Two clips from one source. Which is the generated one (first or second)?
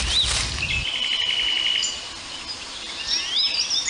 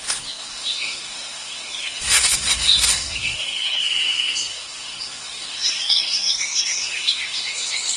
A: second